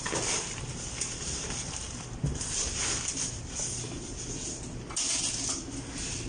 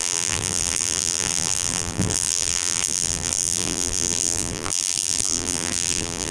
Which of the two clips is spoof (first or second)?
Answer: second